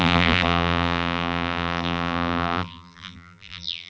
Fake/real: fake